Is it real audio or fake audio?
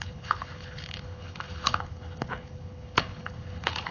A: fake